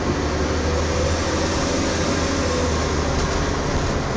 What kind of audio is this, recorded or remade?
recorded